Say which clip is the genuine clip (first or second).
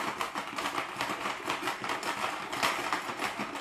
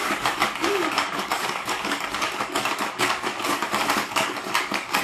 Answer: first